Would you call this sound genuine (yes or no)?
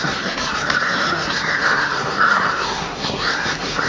no